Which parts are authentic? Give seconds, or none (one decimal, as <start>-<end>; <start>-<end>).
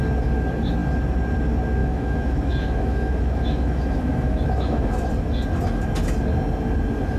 0.0-1.8; 5.1-7.2